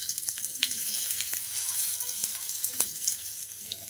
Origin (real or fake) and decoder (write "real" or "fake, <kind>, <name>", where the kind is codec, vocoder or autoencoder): fake, codec, SNAC